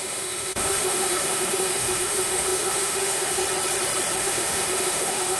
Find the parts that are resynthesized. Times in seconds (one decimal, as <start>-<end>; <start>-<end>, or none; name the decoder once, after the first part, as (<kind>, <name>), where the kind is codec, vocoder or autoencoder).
0.0-3.4 (autoencoder, DAC-VAE); 4.2-5.4